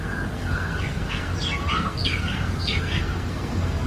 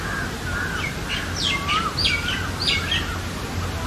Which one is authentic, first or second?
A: second